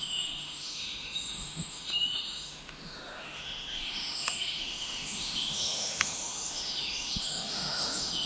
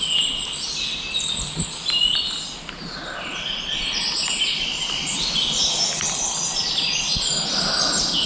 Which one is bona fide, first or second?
second